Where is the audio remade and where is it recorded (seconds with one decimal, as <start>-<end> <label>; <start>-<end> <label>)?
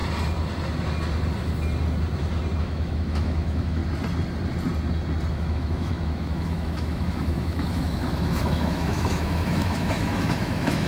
0.0-2.6 recorded; 2.6-3.8 remade; 3.8-5.3 recorded; 5.3-10.9 remade